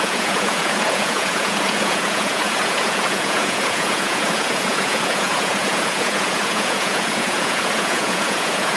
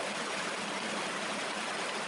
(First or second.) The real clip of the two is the second